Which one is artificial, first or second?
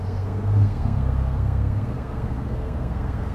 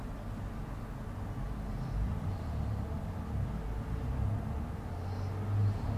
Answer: first